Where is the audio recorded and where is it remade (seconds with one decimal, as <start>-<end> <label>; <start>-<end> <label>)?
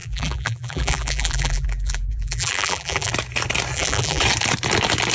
0.0-3.1 remade; 3.1-3.7 recorded; 3.7-4.2 remade; 4.2-5.1 recorded